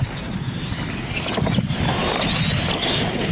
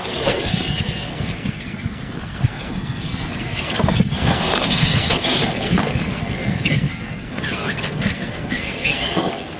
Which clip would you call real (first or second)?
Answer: first